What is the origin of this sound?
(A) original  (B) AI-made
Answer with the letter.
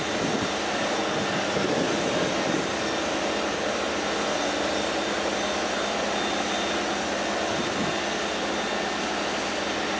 A